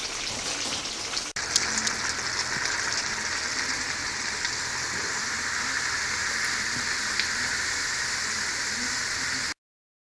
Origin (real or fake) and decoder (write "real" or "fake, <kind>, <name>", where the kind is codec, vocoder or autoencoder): real